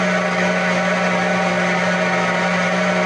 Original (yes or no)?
yes